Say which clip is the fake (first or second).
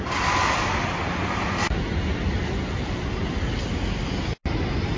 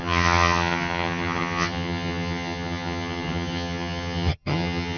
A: second